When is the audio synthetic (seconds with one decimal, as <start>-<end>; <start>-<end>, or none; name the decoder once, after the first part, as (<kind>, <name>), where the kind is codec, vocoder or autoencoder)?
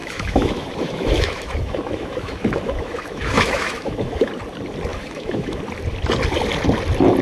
0.0-4.3 (autoencoder, DAC-VAE); 4.9-5.6